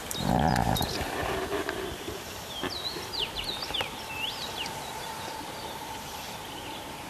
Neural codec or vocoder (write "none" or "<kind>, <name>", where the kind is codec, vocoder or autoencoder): vocoder, BigVGAN v2